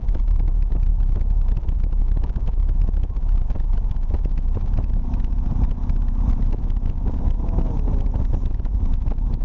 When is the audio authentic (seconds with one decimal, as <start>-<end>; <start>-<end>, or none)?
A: 0.0-9.4